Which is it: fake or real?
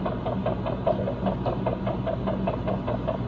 real